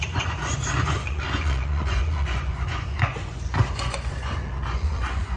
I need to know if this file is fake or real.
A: fake